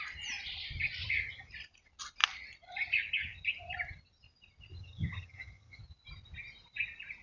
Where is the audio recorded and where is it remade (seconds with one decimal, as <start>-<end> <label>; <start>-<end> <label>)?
0.0-1.0 recorded; 1.0-1.5 remade; 1.5-4.8 recorded; 4.8-5.8 remade; 5.8-7.2 recorded